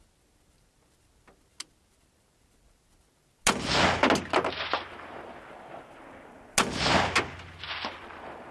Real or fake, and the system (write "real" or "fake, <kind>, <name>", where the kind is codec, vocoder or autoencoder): real